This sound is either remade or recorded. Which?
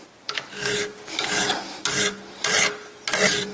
recorded